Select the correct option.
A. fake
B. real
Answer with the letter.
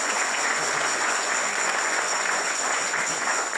A